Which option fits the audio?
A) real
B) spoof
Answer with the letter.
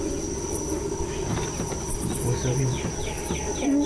A